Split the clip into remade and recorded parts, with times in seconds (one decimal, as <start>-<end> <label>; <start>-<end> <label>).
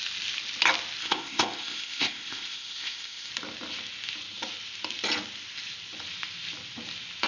0.0-1.0 recorded; 1.0-3.3 remade; 3.3-7.3 recorded